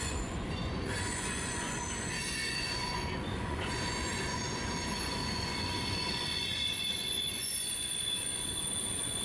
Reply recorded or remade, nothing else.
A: remade